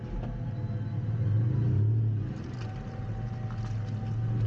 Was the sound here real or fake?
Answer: real